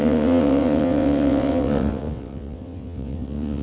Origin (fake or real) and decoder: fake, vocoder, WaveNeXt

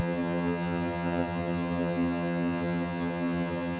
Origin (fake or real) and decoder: fake, vocoder, HiFi-GAN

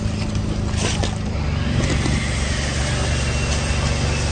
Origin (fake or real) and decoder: real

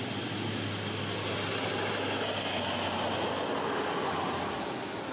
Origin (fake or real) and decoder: real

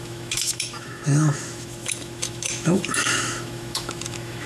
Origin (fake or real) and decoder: fake, autoencoder, DAC-VAE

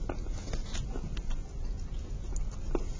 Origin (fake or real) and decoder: real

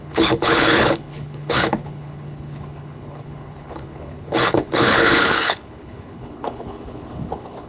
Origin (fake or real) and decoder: fake, codec, HILCodec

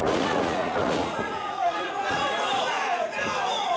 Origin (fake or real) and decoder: fake, vocoder, Vocos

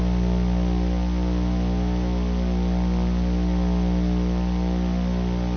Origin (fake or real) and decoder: real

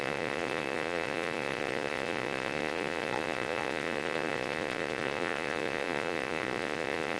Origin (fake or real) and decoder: fake, vocoder, Vocos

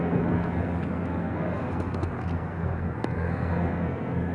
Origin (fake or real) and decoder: fake, codec, SNAC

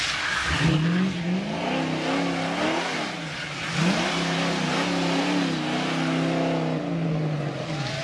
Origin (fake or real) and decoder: real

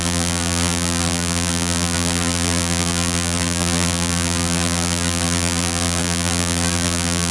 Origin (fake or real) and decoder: fake, vocoder, BigVGAN v2